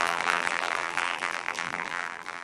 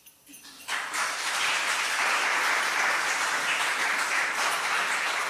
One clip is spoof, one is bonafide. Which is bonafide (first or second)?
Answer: second